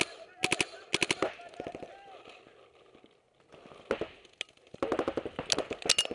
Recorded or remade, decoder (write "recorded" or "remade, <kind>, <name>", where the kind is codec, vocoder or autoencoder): recorded